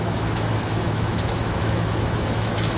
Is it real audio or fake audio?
fake